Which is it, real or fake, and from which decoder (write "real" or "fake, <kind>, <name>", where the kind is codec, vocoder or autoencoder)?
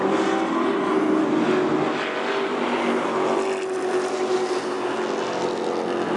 real